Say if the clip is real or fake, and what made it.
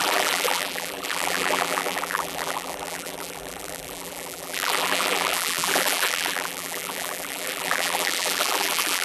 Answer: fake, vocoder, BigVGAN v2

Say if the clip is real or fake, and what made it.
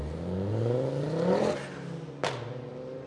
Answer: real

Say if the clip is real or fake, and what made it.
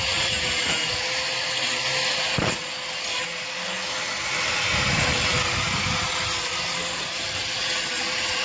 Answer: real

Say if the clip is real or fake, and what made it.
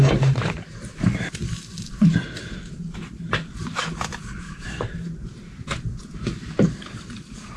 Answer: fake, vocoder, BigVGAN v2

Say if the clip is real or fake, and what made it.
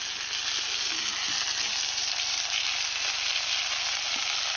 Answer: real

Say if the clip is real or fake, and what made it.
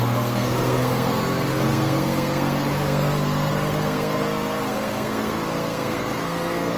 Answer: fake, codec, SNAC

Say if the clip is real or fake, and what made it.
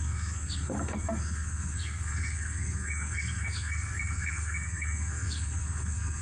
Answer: fake, codec, SNAC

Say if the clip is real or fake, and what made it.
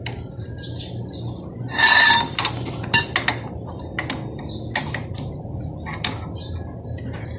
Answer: real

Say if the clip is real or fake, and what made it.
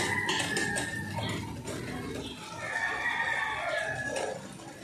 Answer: real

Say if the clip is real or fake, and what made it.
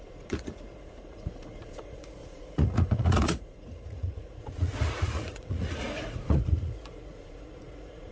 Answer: fake, vocoder, Vocos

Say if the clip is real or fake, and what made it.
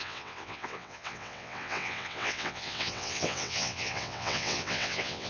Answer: fake, vocoder, WaveNeXt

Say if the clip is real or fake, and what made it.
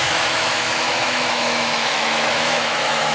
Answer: fake, autoencoder, DAC-VAE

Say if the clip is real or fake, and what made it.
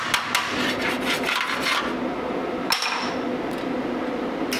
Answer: real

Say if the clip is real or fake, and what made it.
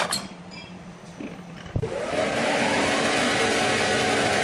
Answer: real